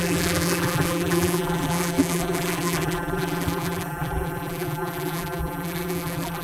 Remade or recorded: remade